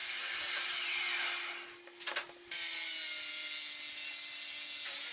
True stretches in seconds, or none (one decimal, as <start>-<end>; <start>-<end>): 0.0-5.1